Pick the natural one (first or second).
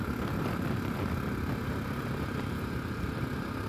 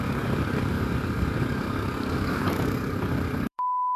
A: first